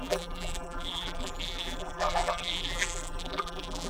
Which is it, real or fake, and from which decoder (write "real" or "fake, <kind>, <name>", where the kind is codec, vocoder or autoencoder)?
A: fake, vocoder, BigVGAN v2